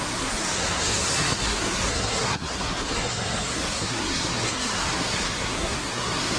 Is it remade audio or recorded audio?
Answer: remade